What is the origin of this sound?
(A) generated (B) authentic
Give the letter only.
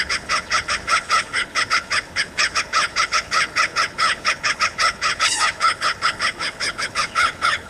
A